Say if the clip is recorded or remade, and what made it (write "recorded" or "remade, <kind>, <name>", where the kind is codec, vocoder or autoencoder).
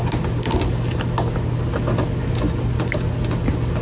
recorded